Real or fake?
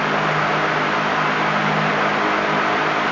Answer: real